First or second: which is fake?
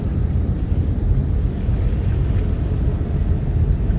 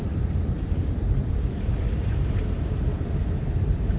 second